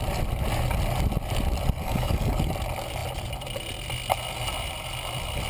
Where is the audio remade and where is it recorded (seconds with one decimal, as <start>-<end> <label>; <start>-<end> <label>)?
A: 0.0-1.8 recorded; 1.8-2.5 remade; 2.5-5.5 recorded